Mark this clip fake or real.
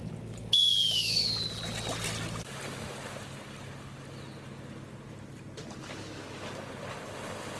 real